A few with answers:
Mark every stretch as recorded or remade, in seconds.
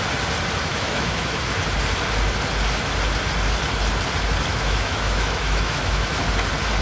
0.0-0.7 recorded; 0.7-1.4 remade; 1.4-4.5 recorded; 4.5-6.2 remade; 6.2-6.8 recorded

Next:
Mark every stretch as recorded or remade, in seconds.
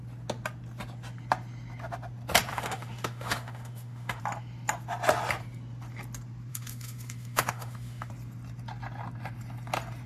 0.0-2.5 recorded; 2.5-4.2 remade; 4.2-6.5 recorded; 6.5-8.1 remade; 8.1-10.1 recorded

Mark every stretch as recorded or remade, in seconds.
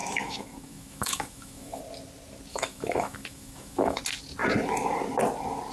0.0-1.8 remade; 1.8-2.5 recorded; 2.5-4.0 remade; 4.0-5.7 recorded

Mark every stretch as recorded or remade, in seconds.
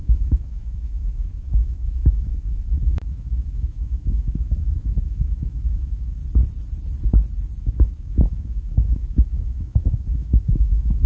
0.0-6.2 remade; 6.2-7.6 recorded; 7.6-11.1 remade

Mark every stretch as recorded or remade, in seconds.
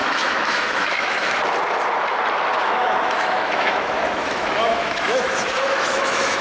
0.0-1.4 remade; 1.4-2.5 recorded; 2.5-6.4 remade